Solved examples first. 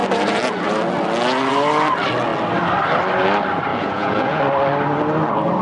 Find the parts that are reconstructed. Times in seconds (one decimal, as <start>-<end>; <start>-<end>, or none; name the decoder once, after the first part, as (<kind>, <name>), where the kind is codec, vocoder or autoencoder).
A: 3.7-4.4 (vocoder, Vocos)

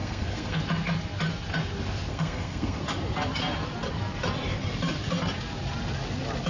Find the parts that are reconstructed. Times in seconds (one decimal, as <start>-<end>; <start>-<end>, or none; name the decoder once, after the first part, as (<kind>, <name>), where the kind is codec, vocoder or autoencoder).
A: 0.0-0.6 (codec, SNAC); 2.1-2.8

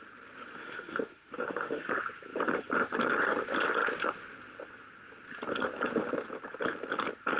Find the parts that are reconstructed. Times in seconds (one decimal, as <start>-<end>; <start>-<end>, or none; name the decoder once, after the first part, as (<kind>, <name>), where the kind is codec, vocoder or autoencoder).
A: 0.6-1.9 (autoencoder, DAC-VAE)